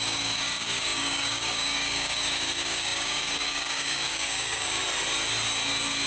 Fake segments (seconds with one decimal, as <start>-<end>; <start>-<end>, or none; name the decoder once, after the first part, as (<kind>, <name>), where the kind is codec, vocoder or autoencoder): 0.0-4.8 (codec, DAC)